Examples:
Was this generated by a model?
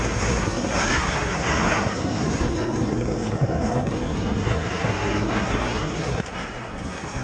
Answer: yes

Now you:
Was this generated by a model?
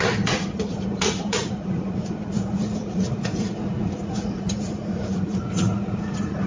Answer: yes